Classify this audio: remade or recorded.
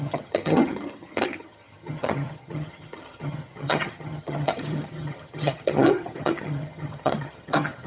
remade